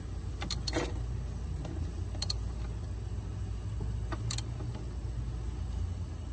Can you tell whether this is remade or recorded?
recorded